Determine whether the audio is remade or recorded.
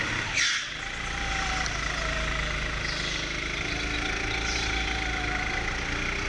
recorded